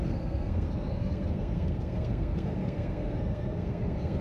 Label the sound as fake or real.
fake